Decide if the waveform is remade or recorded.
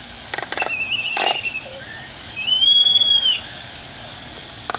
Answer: remade